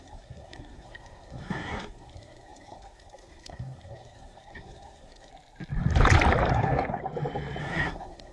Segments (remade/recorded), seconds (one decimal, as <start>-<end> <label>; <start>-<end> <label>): 0.0-5.3 remade; 5.3-6.5 recorded; 6.5-7.0 remade; 7.0-7.6 recorded; 7.6-8.3 remade